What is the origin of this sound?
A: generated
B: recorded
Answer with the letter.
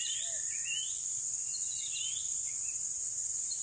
B